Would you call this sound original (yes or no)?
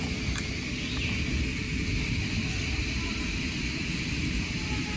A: yes